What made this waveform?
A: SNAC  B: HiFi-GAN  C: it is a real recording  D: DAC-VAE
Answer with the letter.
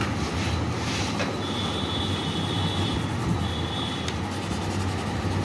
C